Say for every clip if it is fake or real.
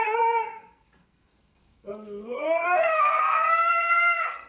fake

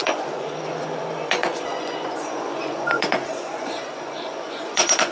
fake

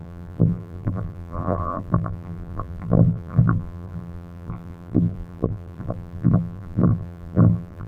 fake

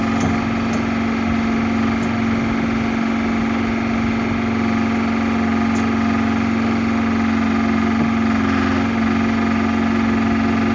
real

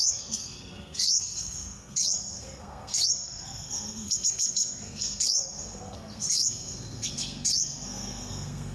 fake